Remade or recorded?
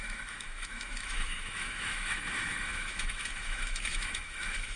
remade